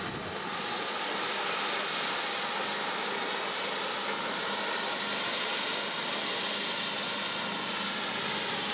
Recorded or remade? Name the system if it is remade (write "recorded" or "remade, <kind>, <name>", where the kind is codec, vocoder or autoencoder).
recorded